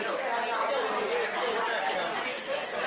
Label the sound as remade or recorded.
recorded